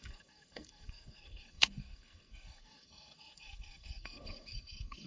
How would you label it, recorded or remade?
remade